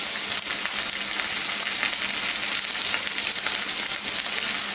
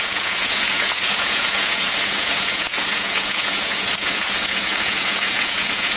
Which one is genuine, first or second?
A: first